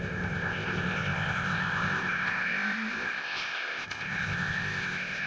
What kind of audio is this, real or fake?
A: fake